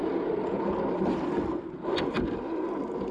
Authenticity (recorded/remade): recorded